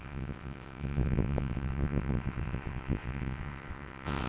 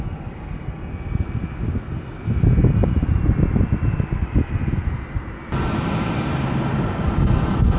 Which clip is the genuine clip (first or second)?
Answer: second